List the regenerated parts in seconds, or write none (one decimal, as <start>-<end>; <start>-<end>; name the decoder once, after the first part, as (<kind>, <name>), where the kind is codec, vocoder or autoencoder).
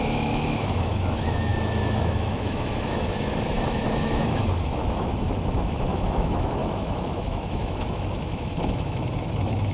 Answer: 0.0-9.7 (autoencoder, DAC-VAE)